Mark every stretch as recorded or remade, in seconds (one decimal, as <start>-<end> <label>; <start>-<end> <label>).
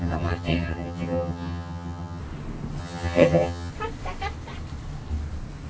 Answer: 0.0-2.2 remade; 2.2-2.8 recorded; 2.8-3.7 remade; 3.7-5.7 recorded